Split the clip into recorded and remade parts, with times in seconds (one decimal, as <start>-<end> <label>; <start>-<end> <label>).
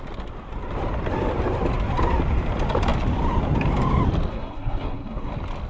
0.0-4.3 recorded; 4.3-5.3 remade; 5.3-5.7 recorded